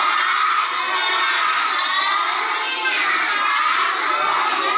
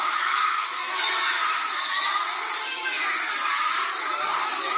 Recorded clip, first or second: first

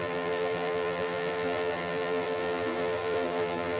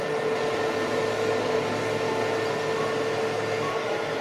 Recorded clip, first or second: second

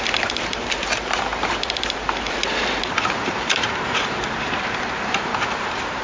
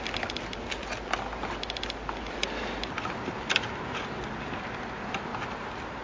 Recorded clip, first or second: second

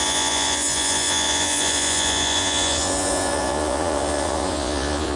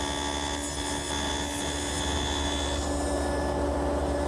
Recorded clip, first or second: second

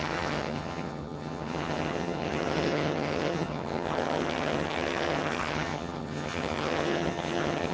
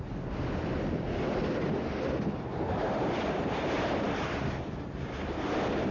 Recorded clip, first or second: second